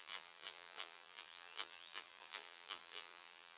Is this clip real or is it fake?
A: fake